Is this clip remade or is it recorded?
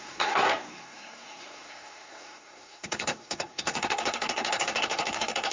remade